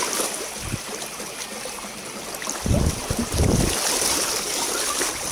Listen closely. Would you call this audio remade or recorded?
recorded